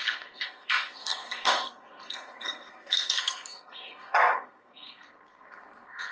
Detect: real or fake fake